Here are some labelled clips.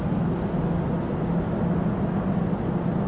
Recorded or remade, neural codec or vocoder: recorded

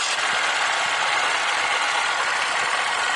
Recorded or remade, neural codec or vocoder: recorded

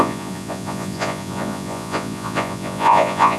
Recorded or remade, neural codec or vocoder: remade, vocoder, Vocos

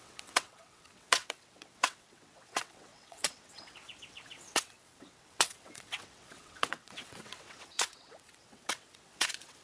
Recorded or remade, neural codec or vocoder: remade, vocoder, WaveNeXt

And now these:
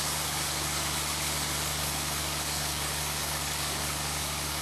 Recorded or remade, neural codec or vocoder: remade, codec, DAC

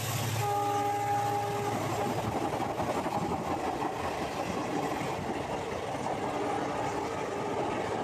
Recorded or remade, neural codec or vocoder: recorded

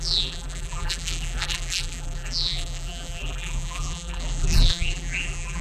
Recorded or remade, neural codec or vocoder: remade, vocoder, BigVGAN v2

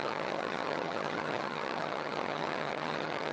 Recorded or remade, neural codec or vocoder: remade, vocoder, HiFi-GAN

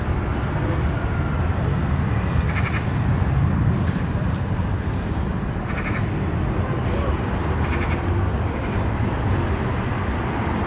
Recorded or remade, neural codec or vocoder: recorded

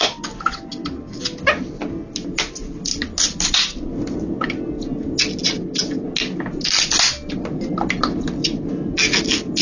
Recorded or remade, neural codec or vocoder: recorded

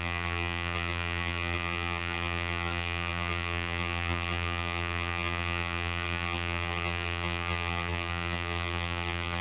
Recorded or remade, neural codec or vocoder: remade, vocoder, BigVGAN v2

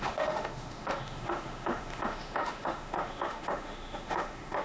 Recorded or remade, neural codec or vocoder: remade, autoencoder, DAC-VAE